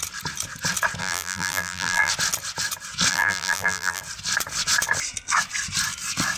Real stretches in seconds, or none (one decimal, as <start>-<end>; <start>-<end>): 0.0-1.0; 2.1-3.1; 4.0-6.4